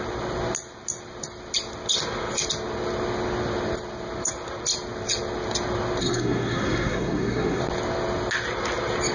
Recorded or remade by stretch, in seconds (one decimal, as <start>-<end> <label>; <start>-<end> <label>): 0.0-6.0 recorded; 6.0-7.6 remade; 7.6-9.1 recorded